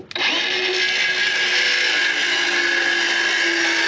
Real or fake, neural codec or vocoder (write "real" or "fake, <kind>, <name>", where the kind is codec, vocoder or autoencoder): real